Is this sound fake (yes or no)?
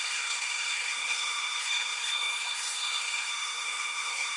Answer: yes